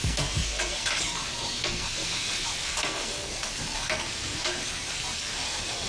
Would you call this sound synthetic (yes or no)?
yes